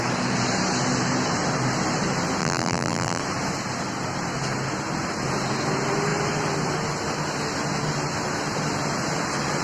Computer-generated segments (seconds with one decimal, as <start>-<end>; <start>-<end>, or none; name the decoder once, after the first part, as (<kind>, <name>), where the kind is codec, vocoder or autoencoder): 2.4-3.2 (vocoder, BigVGAN v2)